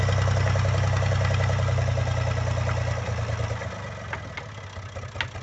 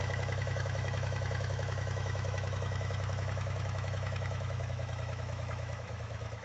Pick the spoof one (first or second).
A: second